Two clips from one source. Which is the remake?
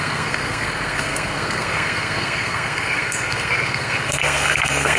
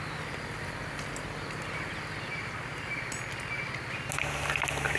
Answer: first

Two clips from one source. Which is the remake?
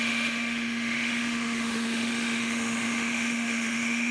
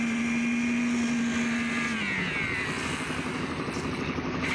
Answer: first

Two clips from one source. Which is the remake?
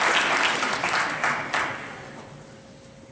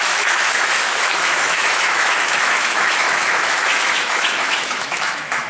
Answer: second